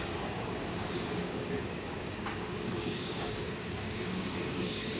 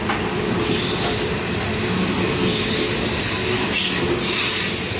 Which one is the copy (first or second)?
first